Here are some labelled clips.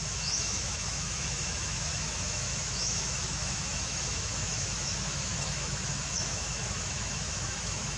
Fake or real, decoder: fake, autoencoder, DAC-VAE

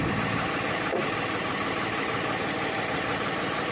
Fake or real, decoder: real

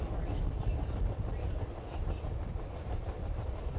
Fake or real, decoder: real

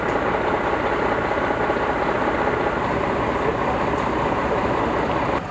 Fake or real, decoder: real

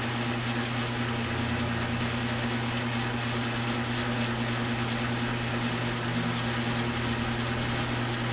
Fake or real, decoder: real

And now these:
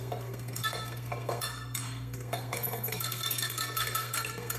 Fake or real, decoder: fake, codec, SNAC